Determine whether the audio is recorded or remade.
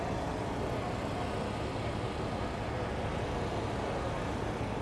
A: recorded